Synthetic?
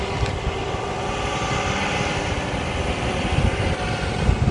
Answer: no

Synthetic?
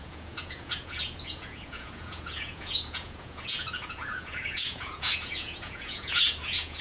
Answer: yes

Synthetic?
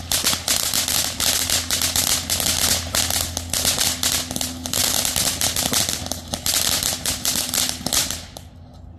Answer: no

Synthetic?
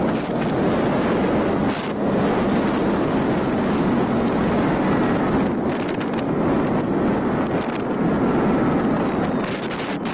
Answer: no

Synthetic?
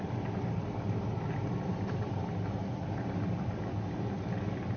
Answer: no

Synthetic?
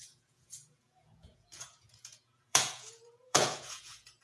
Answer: yes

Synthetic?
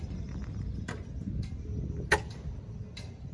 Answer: no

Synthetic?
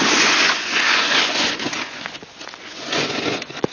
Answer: yes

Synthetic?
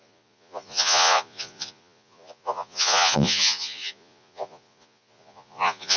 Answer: yes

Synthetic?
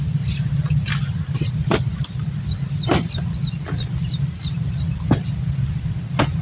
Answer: no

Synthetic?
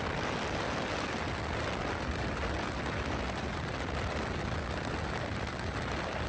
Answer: no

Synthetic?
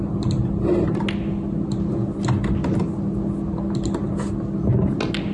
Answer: no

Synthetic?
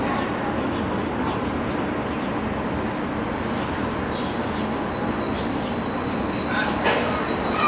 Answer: no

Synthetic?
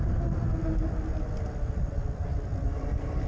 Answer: no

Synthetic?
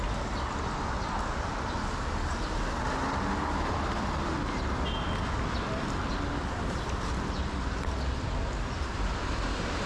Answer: no